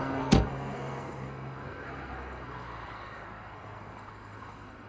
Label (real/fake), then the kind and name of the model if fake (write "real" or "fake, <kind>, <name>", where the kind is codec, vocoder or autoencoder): fake, codec, SNAC